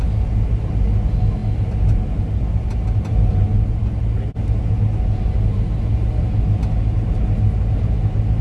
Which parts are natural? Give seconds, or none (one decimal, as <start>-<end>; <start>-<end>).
0.0-8.4